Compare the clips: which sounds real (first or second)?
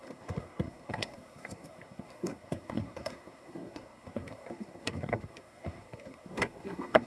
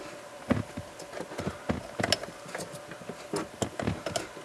second